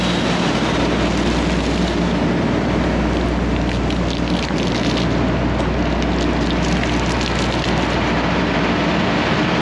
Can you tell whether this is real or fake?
real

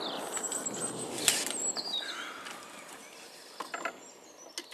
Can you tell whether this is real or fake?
real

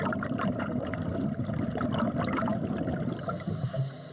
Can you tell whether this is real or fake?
real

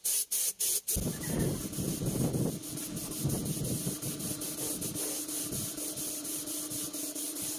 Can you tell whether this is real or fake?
real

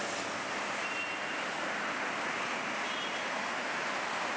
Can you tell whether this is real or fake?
real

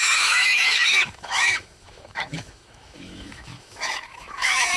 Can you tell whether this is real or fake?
fake